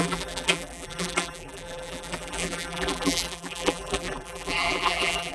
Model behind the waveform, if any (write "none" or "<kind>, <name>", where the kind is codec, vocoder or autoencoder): vocoder, BigVGAN v2